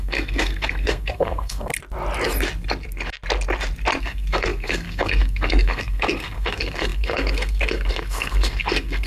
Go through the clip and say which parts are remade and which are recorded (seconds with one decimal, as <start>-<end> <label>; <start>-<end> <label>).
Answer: 0.0-1.7 remade; 1.7-4.0 recorded; 4.0-9.1 remade